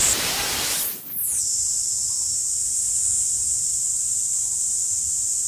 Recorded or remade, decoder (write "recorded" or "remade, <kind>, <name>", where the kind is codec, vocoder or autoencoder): recorded